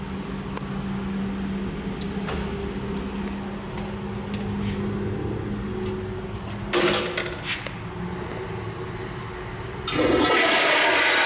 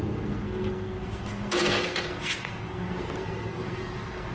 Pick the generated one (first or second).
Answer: second